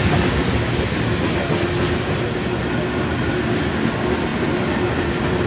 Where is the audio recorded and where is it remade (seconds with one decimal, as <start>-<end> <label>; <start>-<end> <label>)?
0.0-5.5 recorded